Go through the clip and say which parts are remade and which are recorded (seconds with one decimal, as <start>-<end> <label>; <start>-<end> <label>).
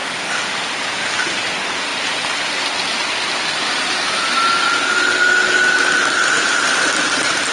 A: 0.0-7.5 recorded